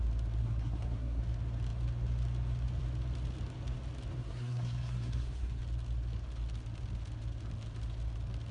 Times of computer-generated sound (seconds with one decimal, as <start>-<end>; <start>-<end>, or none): 0.4-1.2; 4.2-5.6